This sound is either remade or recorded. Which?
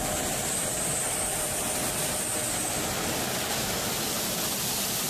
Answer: remade